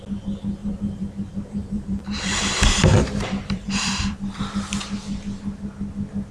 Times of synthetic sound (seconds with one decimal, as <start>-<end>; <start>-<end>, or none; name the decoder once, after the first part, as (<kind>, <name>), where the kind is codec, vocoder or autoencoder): 0.6-4.4 (vocoder, BigVGAN v2)